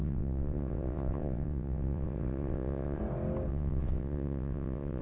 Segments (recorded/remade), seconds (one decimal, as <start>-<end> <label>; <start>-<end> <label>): 0.0-3.0 remade; 3.0-3.5 recorded; 3.5-5.0 remade

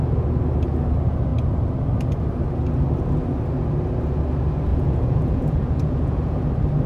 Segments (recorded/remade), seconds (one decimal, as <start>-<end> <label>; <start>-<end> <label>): 0.0-4.7 recorded; 4.7-6.5 remade; 6.5-6.9 recorded